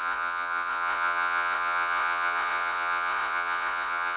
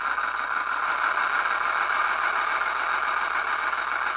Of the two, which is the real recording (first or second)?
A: second